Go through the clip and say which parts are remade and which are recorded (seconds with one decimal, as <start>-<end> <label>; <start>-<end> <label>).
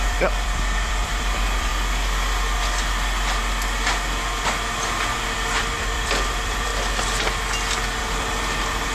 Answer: 0.0-1.7 remade; 1.7-5.1 recorded; 5.1-6.7 remade; 6.7-8.0 recorded; 8.0-8.9 remade